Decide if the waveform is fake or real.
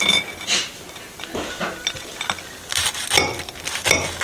real